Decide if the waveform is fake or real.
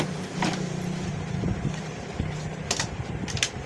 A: fake